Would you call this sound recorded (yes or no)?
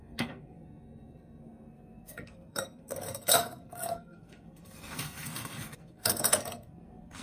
no